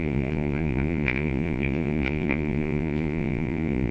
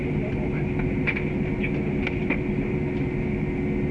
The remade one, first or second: first